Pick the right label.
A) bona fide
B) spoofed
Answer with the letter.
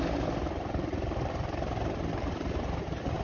A